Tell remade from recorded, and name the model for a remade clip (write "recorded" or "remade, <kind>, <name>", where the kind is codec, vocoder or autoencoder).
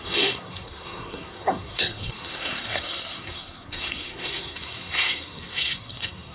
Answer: remade, codec, SNAC